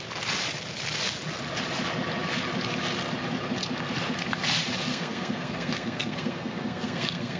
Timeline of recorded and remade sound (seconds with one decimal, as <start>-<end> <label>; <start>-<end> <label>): 0.0-4.9 recorded; 4.9-7.4 remade